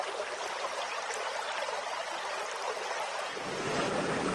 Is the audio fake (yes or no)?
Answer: no